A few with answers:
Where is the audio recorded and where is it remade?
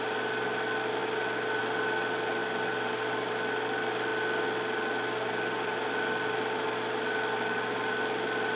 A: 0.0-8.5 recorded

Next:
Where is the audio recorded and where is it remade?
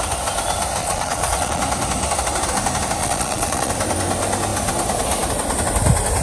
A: 0.0-0.8 recorded; 0.8-1.6 remade; 1.6-3.0 recorded; 3.0-3.7 remade; 3.7-6.2 recorded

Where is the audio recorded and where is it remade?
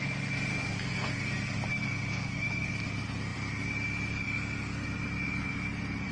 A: 0.0-0.5 recorded; 0.5-1.2 remade; 1.2-1.7 recorded; 1.7-2.7 remade; 2.7-6.1 recorded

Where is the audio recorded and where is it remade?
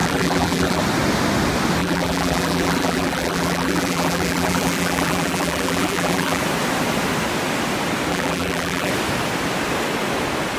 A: 0.0-0.8 remade; 0.8-1.8 recorded; 1.8-6.4 remade; 6.4-8.1 recorded; 8.1-8.9 remade; 8.9-10.6 recorded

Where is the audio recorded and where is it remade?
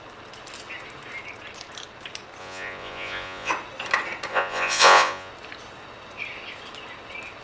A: 0.0-2.4 recorded; 2.4-3.5 remade; 3.5-4.3 recorded; 4.3-5.3 remade; 5.3-7.4 recorded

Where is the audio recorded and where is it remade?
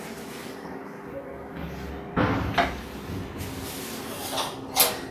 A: 0.0-0.4 recorded; 0.4-1.9 remade; 1.9-5.1 recorded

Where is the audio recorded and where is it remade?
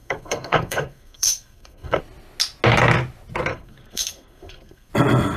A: 0.0-2.0 remade; 2.0-3.5 recorded; 3.5-4.9 remade; 4.9-5.4 recorded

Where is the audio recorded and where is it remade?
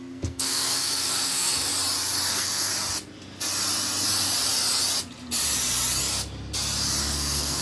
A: 0.0-1.7 remade; 1.7-2.3 recorded; 2.3-2.7 remade; 2.7-7.0 recorded; 7.0-7.6 remade